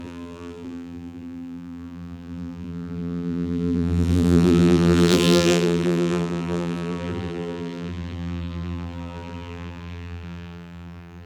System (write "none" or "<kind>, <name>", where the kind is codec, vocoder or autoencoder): vocoder, BigVGAN v2